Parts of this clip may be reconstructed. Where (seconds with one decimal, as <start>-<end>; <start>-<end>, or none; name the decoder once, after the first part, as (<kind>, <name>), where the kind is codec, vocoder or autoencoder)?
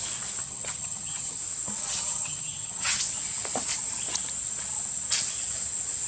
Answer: 0.4-1.4 (vocoder, HiFi-GAN); 1.8-3.0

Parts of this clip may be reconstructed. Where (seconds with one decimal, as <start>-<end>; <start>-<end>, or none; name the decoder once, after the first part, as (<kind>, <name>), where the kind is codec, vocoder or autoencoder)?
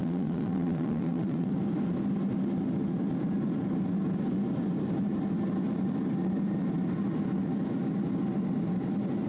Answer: 0.0-1.5 (vocoder, Vocos)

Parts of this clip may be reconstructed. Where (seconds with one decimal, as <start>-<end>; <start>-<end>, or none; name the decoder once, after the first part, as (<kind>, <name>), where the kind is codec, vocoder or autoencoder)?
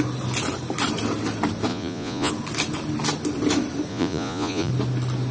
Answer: 1.7-2.3 (vocoder, Vocos); 3.9-4.7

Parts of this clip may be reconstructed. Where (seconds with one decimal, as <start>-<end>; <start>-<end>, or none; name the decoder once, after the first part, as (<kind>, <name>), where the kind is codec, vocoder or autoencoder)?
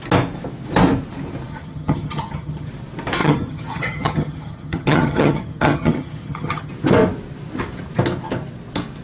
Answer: 1.5-2.7 (vocoder, HiFi-GAN); 3.2-6.7